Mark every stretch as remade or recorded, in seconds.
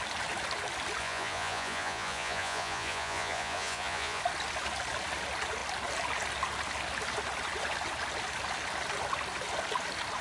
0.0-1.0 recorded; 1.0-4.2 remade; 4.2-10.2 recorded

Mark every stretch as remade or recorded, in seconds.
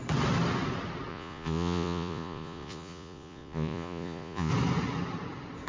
0.0-1.1 recorded; 1.1-4.5 remade; 4.5-5.7 recorded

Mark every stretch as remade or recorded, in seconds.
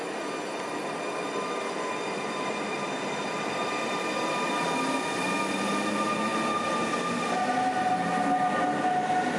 0.0-9.4 recorded